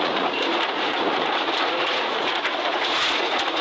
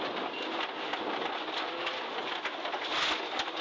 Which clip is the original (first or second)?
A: second